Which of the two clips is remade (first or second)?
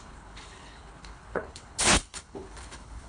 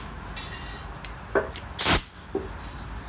first